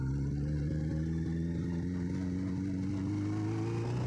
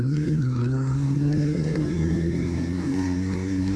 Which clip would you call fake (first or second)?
second